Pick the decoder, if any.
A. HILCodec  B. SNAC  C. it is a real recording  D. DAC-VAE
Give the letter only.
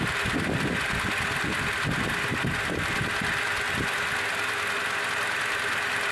C